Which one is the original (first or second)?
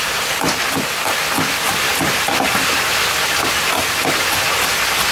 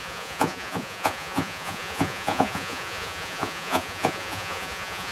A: first